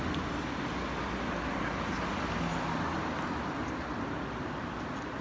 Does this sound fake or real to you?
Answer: real